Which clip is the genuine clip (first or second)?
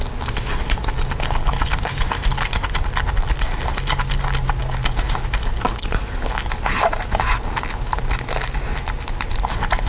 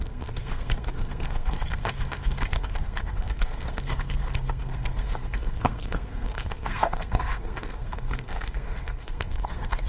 first